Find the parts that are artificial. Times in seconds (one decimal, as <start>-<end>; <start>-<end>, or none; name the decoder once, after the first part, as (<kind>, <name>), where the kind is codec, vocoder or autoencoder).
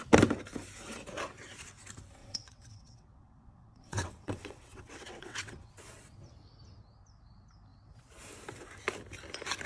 2.2-5.7 (vocoder, WaveNeXt)